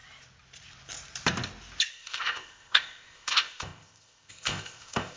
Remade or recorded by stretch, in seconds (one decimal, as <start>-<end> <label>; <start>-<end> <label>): 0.0-1.9 recorded; 1.9-5.2 remade

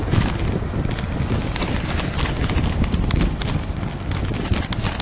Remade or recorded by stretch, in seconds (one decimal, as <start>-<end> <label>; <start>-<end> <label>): 0.0-5.0 recorded

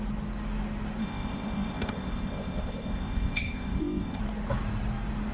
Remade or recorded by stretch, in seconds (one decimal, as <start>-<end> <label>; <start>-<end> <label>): 0.0-1.0 recorded; 1.0-4.2 remade; 4.2-5.3 recorded